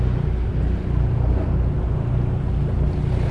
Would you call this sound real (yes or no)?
yes